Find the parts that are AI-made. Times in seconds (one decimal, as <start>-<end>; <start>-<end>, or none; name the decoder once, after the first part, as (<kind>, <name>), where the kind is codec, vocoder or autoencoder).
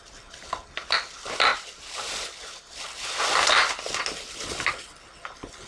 none